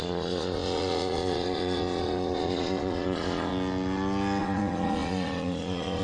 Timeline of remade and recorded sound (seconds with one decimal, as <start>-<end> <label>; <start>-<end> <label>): 0.0-3.5 remade; 3.5-4.4 recorded; 4.4-6.0 remade

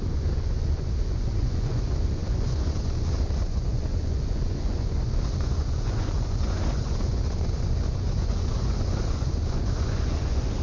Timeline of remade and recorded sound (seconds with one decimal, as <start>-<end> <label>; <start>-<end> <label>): 0.0-10.6 remade

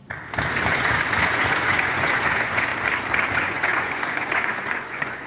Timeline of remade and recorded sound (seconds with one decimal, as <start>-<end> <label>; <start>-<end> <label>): 0.0-0.7 recorded; 0.7-2.7 remade; 2.7-3.3 recorded; 3.3-5.3 remade

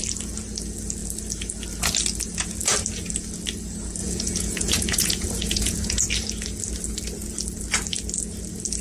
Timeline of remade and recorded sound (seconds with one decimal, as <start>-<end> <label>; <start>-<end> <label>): 0.0-4.0 recorded; 4.0-6.0 remade; 6.0-8.8 recorded

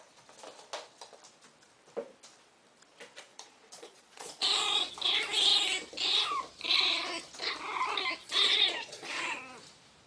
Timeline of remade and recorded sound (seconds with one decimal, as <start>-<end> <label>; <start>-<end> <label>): 0.0-3.3 recorded; 3.3-4.9 remade; 4.9-8.2 recorded; 8.2-9.4 remade; 9.4-10.1 recorded

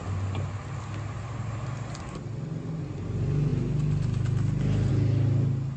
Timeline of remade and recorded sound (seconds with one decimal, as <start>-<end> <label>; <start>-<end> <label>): 0.0-5.8 recorded

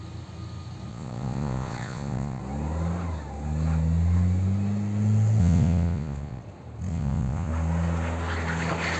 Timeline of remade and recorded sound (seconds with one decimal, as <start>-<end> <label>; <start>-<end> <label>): 0.0-0.9 recorded; 0.9-2.4 remade; 2.4-5.4 recorded; 5.4-6.4 remade; 6.4-6.9 recorded; 6.9-7.5 remade; 7.5-9.0 recorded

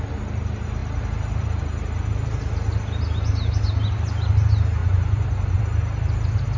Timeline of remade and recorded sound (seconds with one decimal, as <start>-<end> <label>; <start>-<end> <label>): 0.0-4.8 recorded; 4.8-5.6 remade; 5.6-6.6 recorded